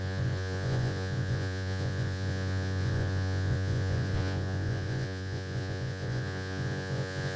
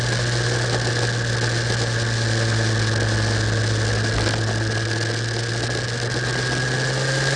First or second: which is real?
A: second